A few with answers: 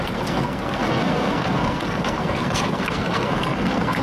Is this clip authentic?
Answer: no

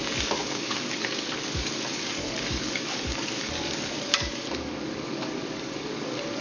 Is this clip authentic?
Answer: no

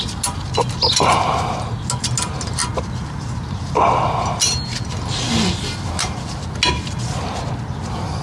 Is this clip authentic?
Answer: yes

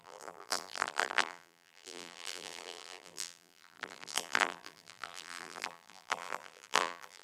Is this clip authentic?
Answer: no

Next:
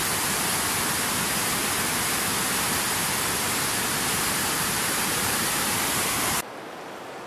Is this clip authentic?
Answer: yes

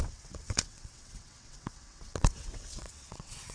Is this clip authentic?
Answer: no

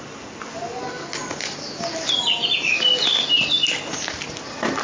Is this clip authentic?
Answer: yes